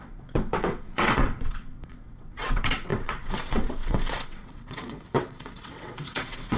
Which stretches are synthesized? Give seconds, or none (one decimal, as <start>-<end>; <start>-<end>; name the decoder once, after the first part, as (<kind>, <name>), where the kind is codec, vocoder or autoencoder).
0.0-6.6 (vocoder, WaveNeXt)